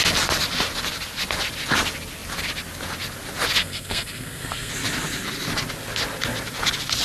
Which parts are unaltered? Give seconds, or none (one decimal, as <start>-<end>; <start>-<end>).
0.0-3.6; 4.7-7.0